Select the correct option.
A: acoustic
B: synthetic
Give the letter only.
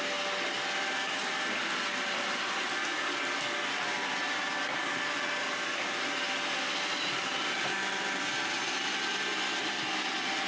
A